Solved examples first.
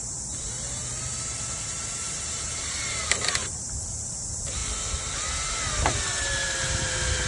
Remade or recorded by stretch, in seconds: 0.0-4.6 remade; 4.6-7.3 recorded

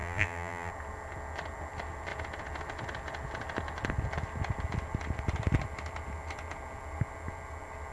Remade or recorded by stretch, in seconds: 0.0-0.7 remade; 0.7-7.9 recorded

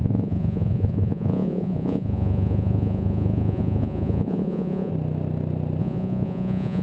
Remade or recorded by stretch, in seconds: 0.0-4.9 remade; 4.9-5.8 recorded; 5.8-6.8 remade

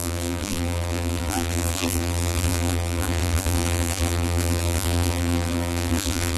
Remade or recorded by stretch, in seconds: 0.0-6.4 remade

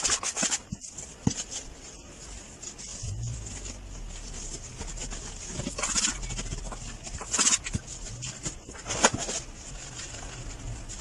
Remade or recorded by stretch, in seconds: 0.0-2.9 recorded; 2.9-3.7 remade; 3.7-11.0 recorded

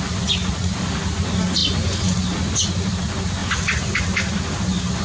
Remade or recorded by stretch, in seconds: 0.0-5.0 recorded

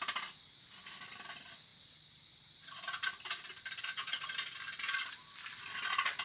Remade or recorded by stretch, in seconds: 0.0-6.2 recorded

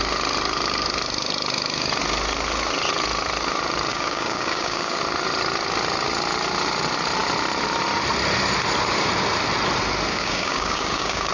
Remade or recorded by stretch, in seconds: 0.0-3.9 recorded; 3.9-5.0 remade; 5.0-10.1 recorded; 10.1-11.3 remade